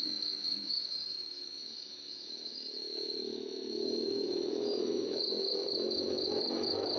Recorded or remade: remade